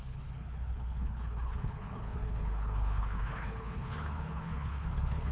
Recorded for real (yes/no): no